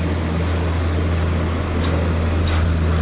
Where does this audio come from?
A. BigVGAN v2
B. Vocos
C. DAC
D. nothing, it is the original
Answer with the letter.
D